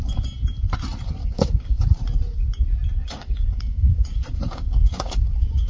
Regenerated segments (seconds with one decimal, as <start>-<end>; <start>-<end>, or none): 1.2-1.8; 3.0-5.7